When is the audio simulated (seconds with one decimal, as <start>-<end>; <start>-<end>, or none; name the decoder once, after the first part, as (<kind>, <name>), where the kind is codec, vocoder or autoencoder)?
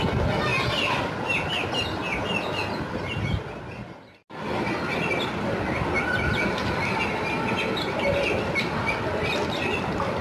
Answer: none